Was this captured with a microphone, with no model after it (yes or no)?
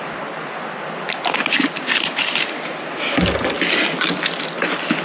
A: yes